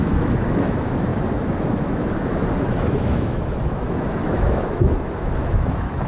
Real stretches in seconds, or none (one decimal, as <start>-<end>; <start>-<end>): none